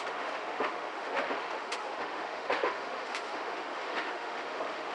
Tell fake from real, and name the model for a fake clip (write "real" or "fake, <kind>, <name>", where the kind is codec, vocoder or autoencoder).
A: fake, autoencoder, DAC-VAE